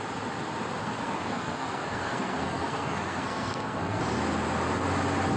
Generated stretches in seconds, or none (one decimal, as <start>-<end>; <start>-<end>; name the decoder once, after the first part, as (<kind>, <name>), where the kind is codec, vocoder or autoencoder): 0.8-4.0 (codec, SNAC)